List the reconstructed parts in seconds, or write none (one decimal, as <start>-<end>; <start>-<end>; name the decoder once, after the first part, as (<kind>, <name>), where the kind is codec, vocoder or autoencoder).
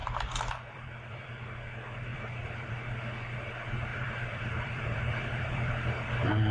0.0-1.4 (vocoder, BigVGAN v2); 2.1-2.7; 3.9-5.7